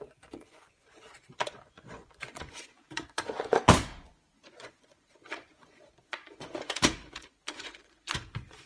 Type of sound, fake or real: fake